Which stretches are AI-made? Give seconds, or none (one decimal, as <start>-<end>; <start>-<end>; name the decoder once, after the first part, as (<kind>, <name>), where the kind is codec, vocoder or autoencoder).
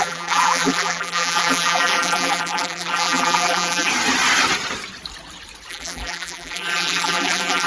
0.0-3.9 (vocoder, BigVGAN v2); 5.7-7.7